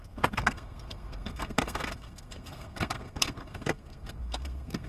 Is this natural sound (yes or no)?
no